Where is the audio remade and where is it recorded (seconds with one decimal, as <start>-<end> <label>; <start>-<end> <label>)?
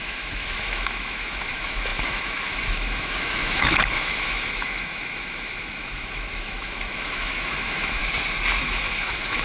0.0-8.0 remade; 8.0-8.6 recorded; 8.6-9.4 remade